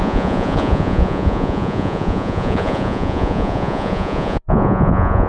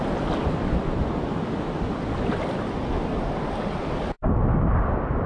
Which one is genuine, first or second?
second